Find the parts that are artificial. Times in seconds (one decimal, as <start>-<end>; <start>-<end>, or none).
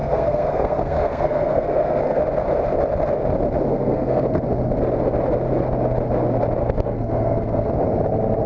0.0-2.2; 3.7-4.4; 6.6-7.7